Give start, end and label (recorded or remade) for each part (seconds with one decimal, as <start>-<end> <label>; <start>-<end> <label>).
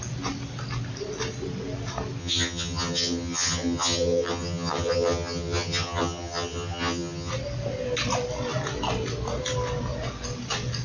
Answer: 0.0-2.2 recorded; 2.2-7.3 remade; 7.3-10.8 recorded